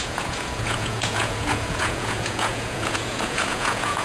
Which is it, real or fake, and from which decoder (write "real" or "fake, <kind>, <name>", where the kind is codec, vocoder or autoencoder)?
fake, vocoder, Vocos